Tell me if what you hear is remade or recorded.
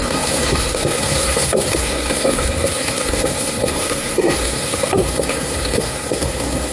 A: remade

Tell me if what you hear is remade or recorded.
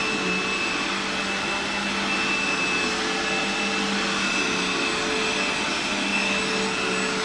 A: recorded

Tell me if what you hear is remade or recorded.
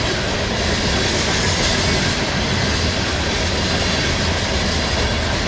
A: recorded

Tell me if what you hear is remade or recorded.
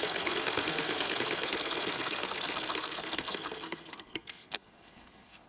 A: remade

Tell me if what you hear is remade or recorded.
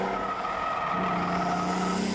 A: recorded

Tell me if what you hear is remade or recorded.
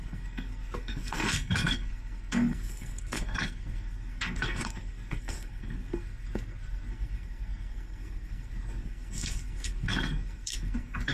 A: remade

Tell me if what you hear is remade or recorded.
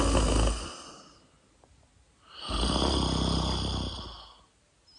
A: recorded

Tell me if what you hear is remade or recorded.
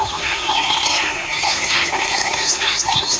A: remade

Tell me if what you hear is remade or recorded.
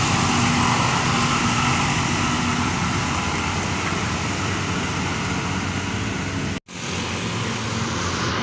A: recorded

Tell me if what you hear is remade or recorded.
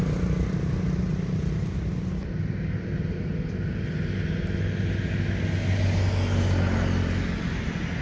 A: recorded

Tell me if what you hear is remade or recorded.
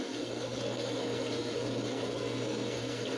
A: remade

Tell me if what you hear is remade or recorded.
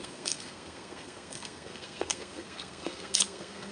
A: remade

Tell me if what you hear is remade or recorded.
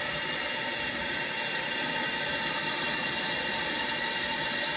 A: recorded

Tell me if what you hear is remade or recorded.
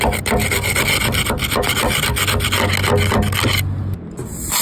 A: recorded